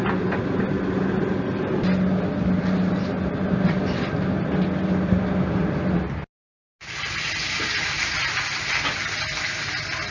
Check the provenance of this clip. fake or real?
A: real